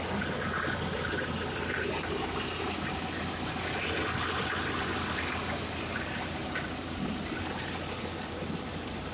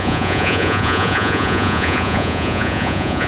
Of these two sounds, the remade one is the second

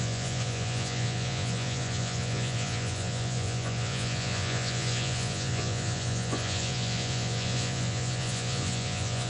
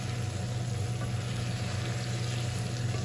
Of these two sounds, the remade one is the first